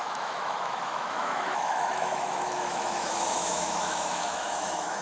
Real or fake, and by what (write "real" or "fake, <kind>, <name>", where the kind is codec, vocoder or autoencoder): fake, autoencoder, DAC-VAE